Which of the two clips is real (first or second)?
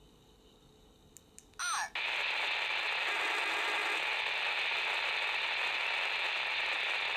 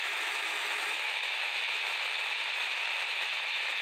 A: first